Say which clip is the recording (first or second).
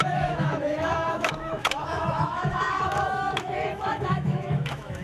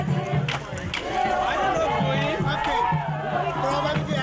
second